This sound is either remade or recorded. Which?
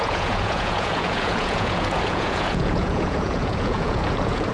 remade